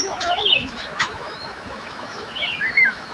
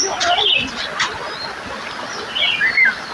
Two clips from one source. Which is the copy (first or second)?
first